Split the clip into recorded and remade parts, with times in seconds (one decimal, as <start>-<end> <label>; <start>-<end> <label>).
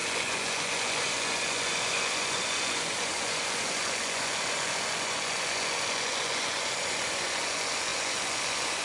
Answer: 0.0-8.8 remade